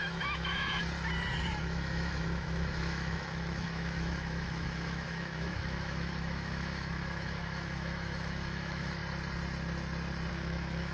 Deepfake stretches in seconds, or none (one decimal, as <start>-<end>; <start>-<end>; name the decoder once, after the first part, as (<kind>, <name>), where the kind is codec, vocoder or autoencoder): 0.0-0.8 (autoencoder, DAC-VAE); 1.6-9.0; 10.3-10.9